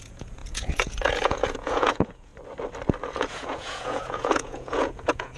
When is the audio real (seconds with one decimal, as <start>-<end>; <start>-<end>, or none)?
2.3-3.1

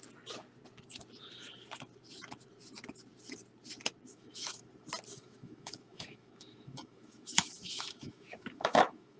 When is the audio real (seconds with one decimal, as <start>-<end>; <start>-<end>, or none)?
0.0-4.1; 4.6-5.1

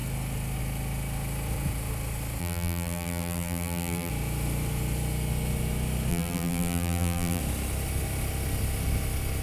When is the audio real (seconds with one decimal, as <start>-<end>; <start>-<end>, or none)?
0.0-2.4; 4.1-6.1; 7.4-9.4